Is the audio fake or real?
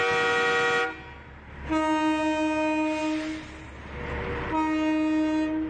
real